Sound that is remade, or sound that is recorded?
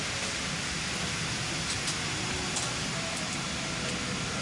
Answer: recorded